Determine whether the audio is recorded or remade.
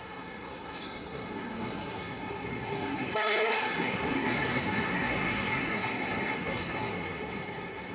remade